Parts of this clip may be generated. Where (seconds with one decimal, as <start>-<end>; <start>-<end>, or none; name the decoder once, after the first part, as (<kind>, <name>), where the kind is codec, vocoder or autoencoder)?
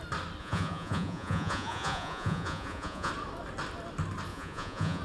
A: 0.4-3.1 (vocoder, Vocos); 4.3-5.0